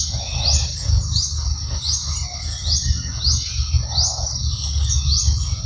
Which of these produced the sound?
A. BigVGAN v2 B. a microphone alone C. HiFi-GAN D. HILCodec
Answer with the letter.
B